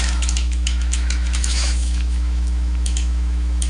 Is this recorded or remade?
remade